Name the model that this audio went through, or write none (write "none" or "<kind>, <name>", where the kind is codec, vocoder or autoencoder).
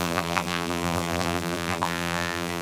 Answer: vocoder, BigVGAN v2